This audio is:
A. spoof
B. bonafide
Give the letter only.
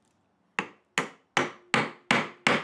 B